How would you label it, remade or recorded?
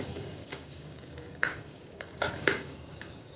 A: remade